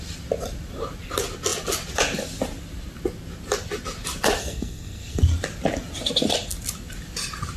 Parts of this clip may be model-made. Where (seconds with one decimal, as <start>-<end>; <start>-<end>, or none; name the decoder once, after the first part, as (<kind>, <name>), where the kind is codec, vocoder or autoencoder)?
4.4-5.2 (codec, SNAC)